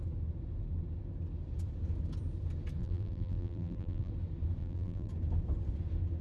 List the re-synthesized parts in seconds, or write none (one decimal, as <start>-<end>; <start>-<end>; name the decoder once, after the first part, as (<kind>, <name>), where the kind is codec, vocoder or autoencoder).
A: 2.8-4.1 (vocoder, BigVGAN v2); 4.6-5.1

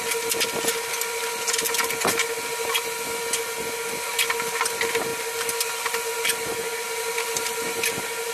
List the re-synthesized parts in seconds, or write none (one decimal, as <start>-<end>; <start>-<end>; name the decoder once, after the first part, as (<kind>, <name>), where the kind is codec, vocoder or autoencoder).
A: 5.1-8.3 (vocoder, BigVGAN v2)

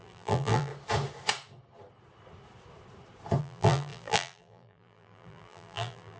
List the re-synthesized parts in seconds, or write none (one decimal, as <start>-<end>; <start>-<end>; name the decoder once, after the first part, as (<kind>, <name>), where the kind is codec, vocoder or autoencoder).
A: 0.0-0.7 (vocoder, BigVGAN v2); 3.4-6.2